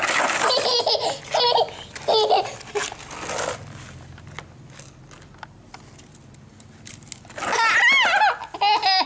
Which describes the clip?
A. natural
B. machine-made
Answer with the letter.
A